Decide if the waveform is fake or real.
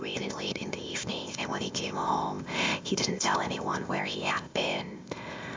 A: fake